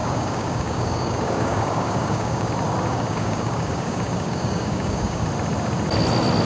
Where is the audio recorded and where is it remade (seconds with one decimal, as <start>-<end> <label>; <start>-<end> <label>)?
0.0-2.5 remade; 2.5-2.9 recorded; 2.9-5.2 remade; 5.2-6.4 recorded